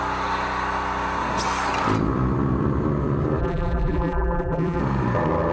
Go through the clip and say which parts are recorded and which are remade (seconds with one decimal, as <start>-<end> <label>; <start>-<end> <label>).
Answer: 0.0-3.4 recorded; 3.4-4.8 remade; 4.8-5.5 recorded